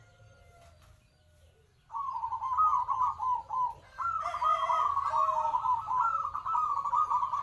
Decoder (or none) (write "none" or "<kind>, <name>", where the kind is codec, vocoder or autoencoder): none